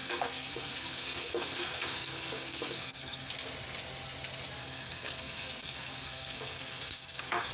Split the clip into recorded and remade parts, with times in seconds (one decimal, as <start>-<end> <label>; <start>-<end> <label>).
0.0-3.3 remade; 3.3-4.6 recorded; 4.6-7.5 remade